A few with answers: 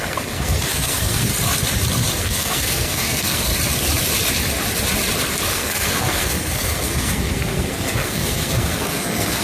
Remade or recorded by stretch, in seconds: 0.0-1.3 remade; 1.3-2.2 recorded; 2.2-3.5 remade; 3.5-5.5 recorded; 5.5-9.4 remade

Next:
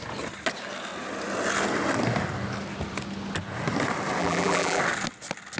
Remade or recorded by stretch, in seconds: 0.0-4.2 recorded; 4.2-4.8 remade; 4.8-5.6 recorded

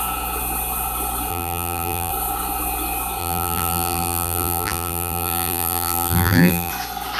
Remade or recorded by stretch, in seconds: 0.0-1.3 recorded; 1.3-2.1 remade; 2.1-3.2 recorded; 3.2-6.7 remade; 6.7-7.2 recorded

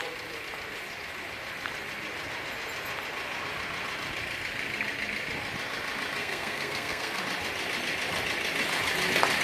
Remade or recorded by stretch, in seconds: 0.0-6.2 recorded; 6.2-7.2 remade; 7.2-9.4 recorded

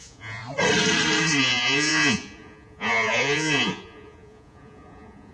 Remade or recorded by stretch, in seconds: 0.0-0.4 remade; 0.4-1.4 recorded; 1.4-5.3 remade

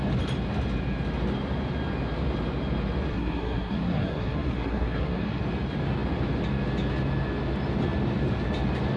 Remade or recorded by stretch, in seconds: 0.0-3.1 recorded; 3.1-5.4 remade; 5.4-9.0 recorded